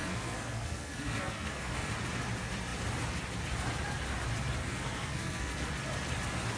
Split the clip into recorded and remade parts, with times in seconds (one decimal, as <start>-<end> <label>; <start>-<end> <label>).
0.0-1.9 remade; 1.9-4.6 recorded; 4.6-5.7 remade; 5.7-6.6 recorded

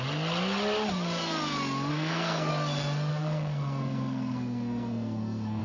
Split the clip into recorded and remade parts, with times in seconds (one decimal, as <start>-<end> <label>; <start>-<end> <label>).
0.0-1.9 recorded; 1.9-2.5 remade; 2.5-3.1 recorded; 3.1-5.6 remade

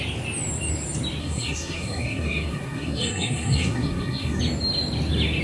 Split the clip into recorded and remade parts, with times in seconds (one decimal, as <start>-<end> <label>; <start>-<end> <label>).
0.0-1.2 recorded; 1.2-4.4 remade; 4.4-5.4 recorded

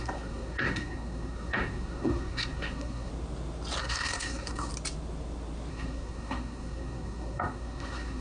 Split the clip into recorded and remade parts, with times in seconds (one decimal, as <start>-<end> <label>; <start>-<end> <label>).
0.0-3.1 remade; 3.1-3.8 recorded; 3.8-4.7 remade; 4.7-5.7 recorded; 5.7-8.2 remade

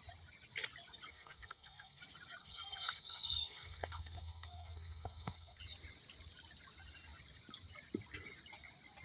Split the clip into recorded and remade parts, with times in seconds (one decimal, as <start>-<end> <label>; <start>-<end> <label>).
0.0-1.1 recorded; 1.1-2.0 remade; 2.0-2.4 recorded; 2.4-5.6 remade; 5.6-9.0 recorded

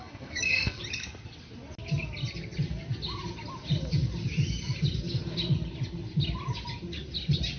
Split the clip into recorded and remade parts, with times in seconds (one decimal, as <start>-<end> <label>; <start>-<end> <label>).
0.0-0.8 remade; 0.8-7.6 recorded

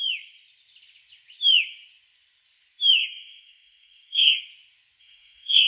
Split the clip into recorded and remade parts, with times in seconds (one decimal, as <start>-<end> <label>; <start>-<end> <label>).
0.0-3.0 recorded; 3.0-4.4 remade; 4.4-5.0 recorded; 5.0-5.7 remade

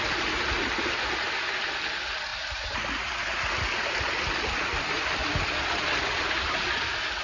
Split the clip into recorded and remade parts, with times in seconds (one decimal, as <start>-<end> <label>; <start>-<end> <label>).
0.0-7.2 recorded